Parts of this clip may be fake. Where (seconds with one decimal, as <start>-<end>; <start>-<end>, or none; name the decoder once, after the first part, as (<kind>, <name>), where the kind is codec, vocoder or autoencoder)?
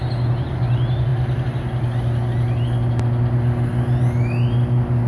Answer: none